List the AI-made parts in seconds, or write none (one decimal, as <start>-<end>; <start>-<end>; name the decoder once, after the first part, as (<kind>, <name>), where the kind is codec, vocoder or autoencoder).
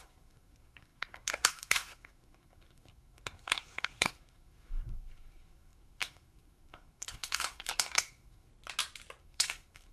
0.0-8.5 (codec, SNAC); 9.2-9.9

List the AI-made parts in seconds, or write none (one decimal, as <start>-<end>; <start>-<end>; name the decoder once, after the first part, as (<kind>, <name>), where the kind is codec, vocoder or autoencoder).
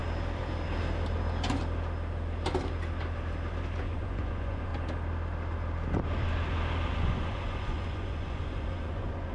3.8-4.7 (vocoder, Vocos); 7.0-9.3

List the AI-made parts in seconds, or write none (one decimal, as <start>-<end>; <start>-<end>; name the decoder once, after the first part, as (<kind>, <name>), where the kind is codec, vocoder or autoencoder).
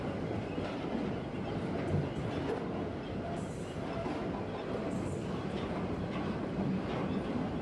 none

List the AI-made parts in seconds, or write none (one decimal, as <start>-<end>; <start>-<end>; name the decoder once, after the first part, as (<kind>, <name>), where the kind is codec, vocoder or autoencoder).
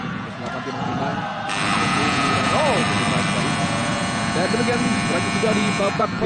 0.0-1.1 (vocoder, Vocos); 1.8-2.8; 3.4-6.3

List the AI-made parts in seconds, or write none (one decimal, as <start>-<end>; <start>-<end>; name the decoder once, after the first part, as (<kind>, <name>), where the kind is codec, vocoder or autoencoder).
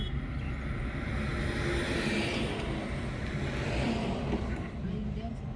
none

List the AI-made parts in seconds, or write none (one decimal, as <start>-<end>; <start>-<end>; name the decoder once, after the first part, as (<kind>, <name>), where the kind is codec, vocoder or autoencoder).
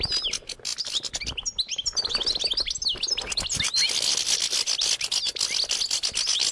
none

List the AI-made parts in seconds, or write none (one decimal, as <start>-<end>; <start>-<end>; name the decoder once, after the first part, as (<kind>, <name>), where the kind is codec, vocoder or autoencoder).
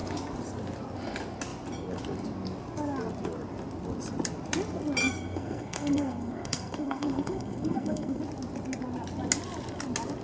5.0-8.2 (codec, SNAC)